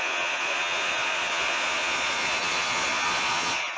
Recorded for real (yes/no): no